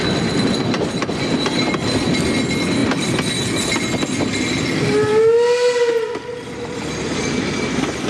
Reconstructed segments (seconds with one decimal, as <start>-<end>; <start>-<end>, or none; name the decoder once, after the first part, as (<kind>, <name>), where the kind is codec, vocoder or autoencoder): none